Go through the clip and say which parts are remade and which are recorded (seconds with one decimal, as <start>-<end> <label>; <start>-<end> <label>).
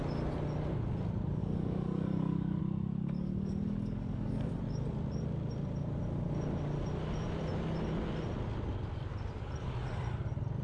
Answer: 0.0-1.4 recorded; 1.4-2.6 remade; 2.6-3.0 recorded; 3.0-4.6 remade; 4.6-10.6 recorded